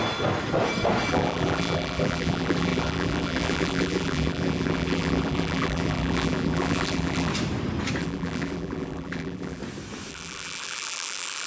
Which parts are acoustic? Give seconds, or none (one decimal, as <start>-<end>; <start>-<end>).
0.0-1.1; 7.3-8.0; 9.6-10.1

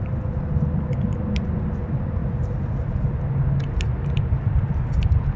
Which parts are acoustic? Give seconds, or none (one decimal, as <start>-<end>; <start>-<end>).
0.0-2.2; 3.3-5.4